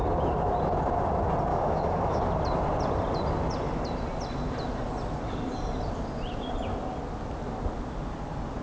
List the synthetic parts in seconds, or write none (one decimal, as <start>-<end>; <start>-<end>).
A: 1.5-2.2